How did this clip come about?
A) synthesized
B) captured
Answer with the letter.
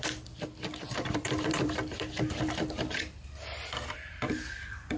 A